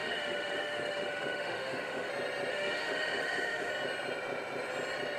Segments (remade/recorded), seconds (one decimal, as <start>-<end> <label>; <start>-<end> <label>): 0.0-2.1 remade; 2.1-2.5 recorded; 2.5-3.7 remade; 3.7-5.2 recorded